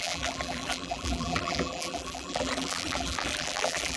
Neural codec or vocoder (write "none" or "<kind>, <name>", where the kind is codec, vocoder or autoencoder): vocoder, BigVGAN v2